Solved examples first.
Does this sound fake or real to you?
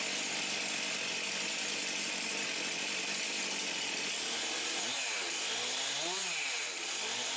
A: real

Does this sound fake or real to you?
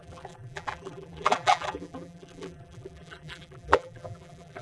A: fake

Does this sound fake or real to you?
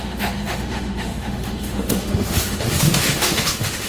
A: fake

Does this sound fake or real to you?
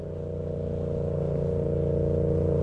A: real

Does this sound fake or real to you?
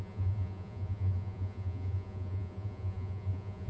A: fake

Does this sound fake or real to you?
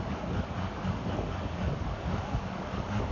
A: fake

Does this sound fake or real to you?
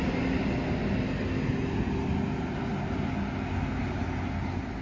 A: real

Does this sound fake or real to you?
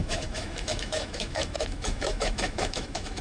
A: fake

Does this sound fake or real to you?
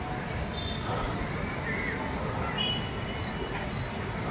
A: real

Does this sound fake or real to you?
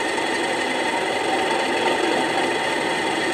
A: real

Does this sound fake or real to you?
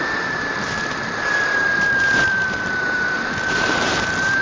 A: fake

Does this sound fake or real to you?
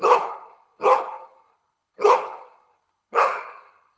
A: fake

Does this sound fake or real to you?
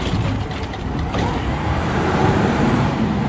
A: fake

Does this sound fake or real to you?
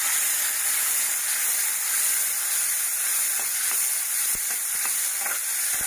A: real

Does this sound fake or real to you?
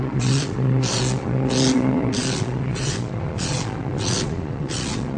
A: fake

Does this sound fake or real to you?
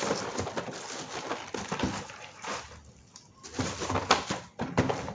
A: real